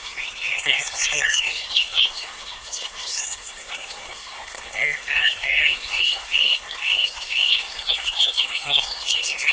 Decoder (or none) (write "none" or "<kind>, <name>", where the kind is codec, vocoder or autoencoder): codec, SNAC